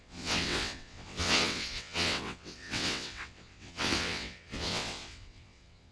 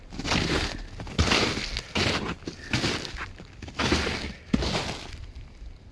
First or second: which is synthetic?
first